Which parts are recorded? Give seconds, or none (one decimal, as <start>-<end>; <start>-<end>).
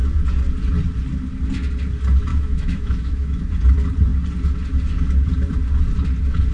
0.0-2.3; 3.5-6.5